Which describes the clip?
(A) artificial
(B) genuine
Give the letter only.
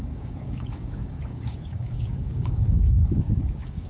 A